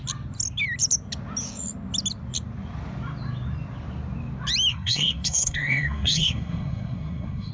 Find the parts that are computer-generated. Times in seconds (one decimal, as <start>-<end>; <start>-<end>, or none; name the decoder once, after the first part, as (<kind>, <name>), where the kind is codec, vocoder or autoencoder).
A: 4.7-7.5 (codec, SNAC)